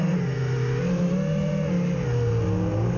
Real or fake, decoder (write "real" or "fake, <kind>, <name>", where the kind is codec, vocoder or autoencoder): real